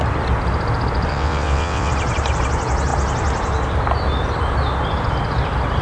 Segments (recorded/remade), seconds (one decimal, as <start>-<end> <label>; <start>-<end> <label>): 0.0-1.1 recorded; 1.1-1.9 remade; 1.9-5.8 recorded